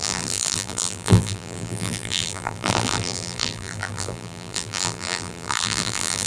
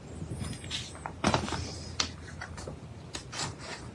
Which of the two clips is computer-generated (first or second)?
first